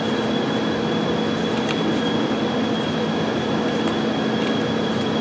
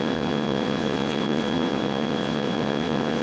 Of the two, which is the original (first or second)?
first